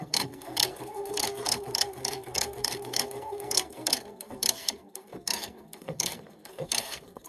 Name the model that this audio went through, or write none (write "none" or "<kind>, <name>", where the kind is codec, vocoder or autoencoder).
codec, SNAC